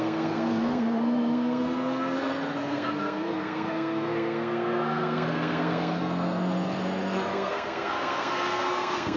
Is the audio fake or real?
fake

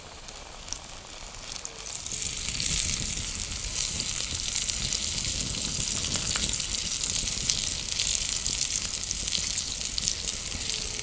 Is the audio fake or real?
real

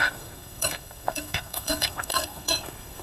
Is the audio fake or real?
fake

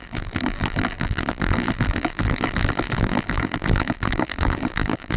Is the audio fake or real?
fake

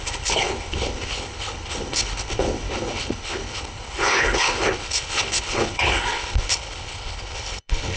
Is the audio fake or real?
fake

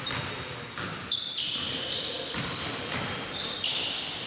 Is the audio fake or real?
fake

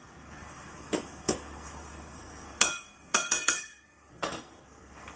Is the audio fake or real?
fake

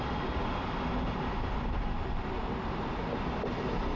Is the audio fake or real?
real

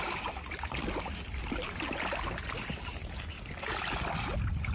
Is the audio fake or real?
real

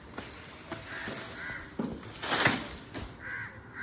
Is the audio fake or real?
real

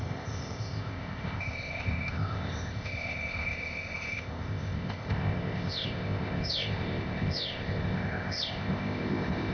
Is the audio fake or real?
fake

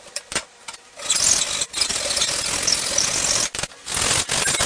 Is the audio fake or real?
real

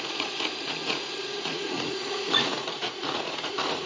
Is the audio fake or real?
fake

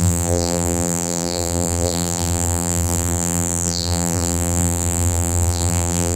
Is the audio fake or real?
fake